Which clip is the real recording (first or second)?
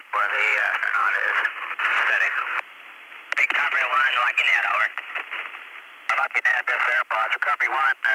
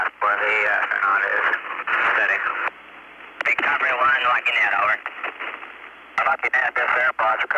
second